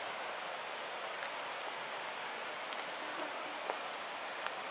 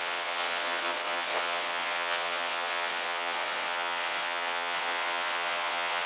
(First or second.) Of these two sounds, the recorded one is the first